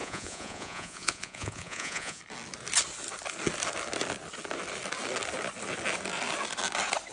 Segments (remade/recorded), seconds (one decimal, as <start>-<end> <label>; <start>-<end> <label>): 0.0-2.2 remade; 2.2-7.1 recorded